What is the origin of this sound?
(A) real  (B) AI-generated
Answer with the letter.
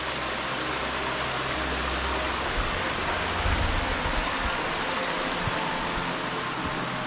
A